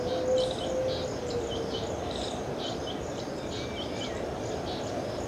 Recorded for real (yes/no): yes